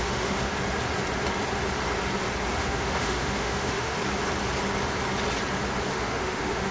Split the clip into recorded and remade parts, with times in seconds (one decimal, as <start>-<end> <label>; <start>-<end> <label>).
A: 0.0-0.5 remade; 0.5-2.7 recorded; 2.7-4.0 remade; 4.0-5.9 recorded; 5.9-6.7 remade